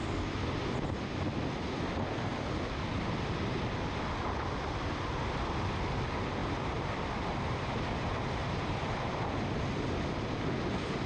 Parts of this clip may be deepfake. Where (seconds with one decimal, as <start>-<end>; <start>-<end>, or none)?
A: 6.4-7.7; 8.4-9.3